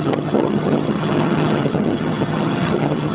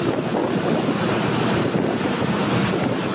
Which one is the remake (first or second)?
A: first